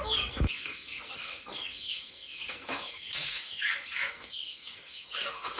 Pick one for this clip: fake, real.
fake